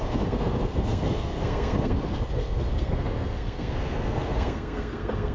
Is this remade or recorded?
remade